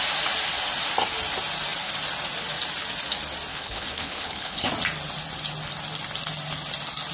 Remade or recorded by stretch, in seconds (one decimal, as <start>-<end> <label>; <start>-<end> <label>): 0.0-3.5 recorded; 3.5-4.7 remade; 4.7-7.1 recorded